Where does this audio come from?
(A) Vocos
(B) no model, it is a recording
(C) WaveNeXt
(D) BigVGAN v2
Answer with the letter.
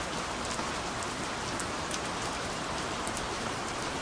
B